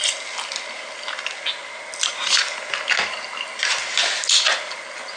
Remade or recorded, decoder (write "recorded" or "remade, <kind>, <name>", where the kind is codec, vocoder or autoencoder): recorded